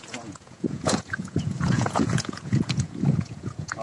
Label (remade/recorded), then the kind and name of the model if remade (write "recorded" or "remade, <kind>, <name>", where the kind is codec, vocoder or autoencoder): remade, vocoder, Vocos